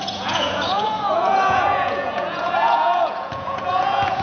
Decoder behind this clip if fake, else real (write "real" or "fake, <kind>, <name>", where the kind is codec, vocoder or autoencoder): fake, vocoder, Vocos